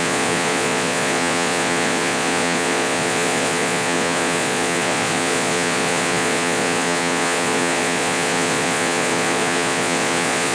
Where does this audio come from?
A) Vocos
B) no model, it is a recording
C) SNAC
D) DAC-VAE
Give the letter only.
A